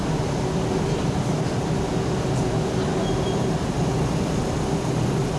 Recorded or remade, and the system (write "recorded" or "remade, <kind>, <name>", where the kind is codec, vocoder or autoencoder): recorded